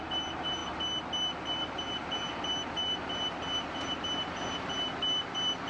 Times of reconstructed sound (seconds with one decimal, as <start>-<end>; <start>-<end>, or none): none